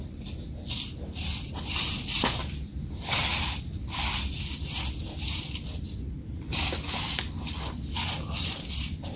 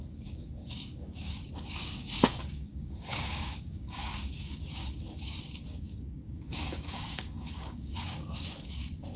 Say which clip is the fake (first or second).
second